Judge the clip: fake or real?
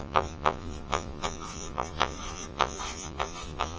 fake